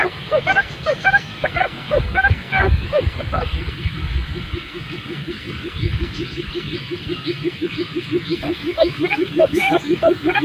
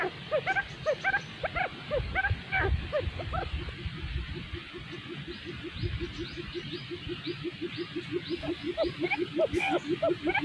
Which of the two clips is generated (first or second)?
first